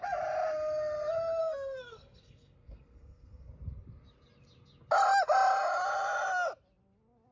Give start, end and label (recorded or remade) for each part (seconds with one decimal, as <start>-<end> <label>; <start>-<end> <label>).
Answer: 0.0-1.4 recorded; 1.4-3.5 remade; 3.5-7.3 recorded